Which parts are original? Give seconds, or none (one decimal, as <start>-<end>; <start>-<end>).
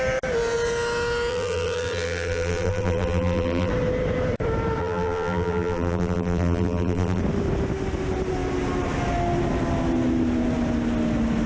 0.0-1.3; 3.7-4.8; 7.2-11.5